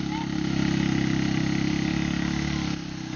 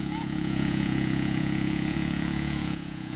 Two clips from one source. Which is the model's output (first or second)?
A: second